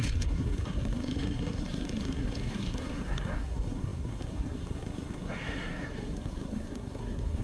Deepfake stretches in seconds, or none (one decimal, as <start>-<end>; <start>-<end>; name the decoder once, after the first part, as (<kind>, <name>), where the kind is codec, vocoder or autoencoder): 0.0-7.4 (codec, SNAC)